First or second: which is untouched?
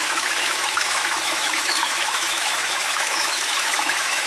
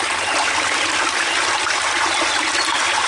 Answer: second